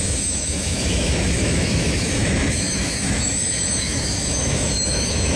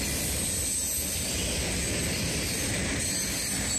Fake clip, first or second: first